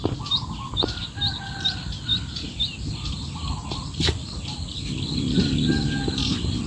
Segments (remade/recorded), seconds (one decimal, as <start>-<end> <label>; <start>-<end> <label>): 0.0-6.7 recorded